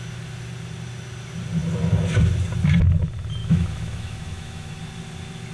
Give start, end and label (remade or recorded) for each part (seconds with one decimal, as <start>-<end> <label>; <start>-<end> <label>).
0.0-3.4 recorded; 3.4-4.8 remade; 4.8-5.5 recorded